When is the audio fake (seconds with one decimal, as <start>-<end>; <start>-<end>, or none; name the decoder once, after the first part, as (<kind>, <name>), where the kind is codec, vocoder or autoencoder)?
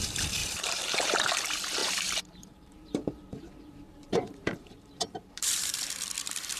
0.4-1.3 (vocoder, BigVGAN v2); 1.8-5.8